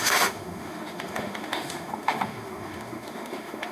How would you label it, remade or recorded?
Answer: remade